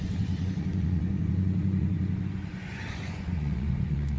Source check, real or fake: fake